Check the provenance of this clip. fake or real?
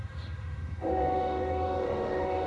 fake